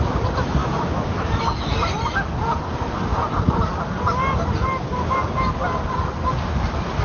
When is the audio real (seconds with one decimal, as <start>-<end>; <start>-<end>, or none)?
0.0-0.6; 1.4-7.0